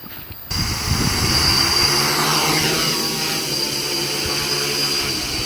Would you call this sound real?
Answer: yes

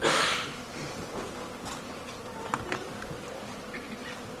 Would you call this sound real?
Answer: yes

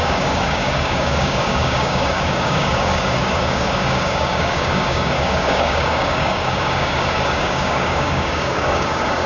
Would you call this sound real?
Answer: no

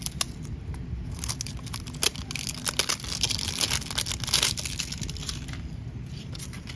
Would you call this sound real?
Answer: yes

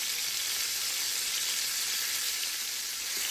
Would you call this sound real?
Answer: yes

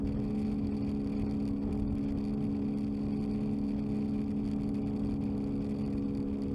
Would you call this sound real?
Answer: yes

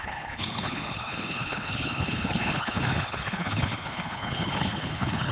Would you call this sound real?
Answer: no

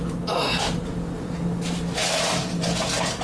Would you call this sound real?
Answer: yes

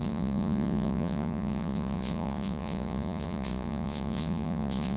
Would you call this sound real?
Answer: no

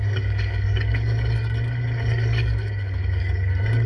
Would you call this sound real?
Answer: no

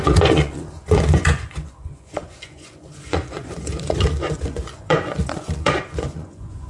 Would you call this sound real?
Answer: no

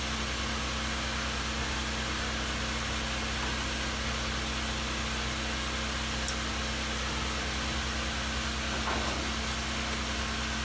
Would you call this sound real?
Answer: yes